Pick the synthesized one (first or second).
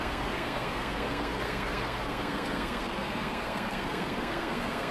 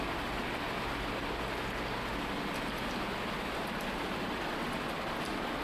first